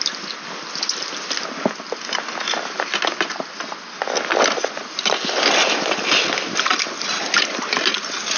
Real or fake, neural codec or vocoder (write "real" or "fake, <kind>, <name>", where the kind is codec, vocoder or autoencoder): real